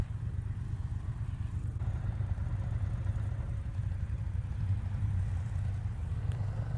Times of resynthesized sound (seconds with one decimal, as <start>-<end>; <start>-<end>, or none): none